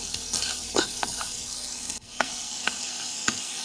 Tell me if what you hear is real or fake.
fake